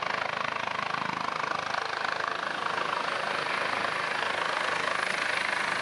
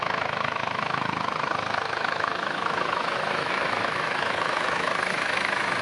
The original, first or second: first